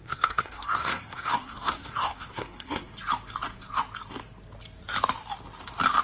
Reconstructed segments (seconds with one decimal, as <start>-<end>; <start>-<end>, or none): 0.0-2.9